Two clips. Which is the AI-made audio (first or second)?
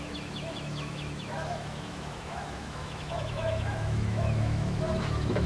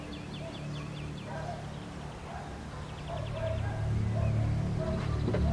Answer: first